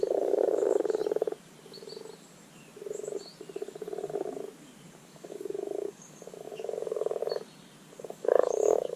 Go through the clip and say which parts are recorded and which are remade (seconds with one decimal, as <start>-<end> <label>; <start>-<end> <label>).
0.0-1.0 remade; 1.0-5.0 recorded; 5.0-7.2 remade; 7.2-8.0 recorded; 8.0-9.0 remade